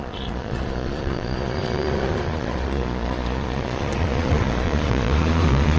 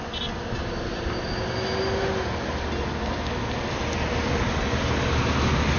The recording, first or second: second